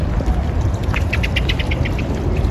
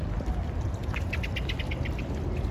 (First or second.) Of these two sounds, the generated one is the first